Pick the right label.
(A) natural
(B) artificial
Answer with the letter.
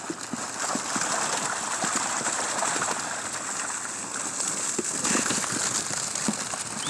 A